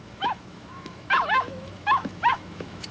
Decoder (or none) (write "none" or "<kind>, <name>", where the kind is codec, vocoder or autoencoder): autoencoder, DAC-VAE